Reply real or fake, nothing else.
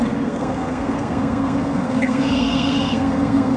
fake